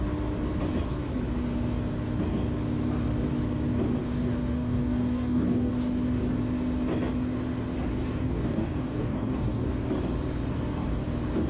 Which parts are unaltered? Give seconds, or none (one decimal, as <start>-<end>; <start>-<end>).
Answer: 0.0-4.0; 5.7-8.0; 9.7-11.5